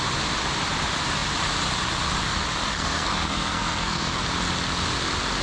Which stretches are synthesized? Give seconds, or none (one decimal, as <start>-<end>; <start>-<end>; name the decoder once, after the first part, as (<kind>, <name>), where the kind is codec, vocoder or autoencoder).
2.7-4.2 (codec, SNAC)